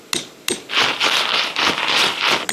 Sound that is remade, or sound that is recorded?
recorded